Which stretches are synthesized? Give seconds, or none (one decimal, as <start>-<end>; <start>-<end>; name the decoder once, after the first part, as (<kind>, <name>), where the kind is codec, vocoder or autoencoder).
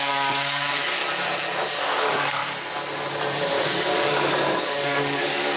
0.0-1.0 (codec, DAC); 1.8-2.4; 4.1-5.6